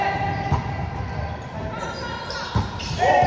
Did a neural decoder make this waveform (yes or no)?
no